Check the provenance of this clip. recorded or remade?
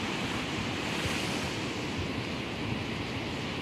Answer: recorded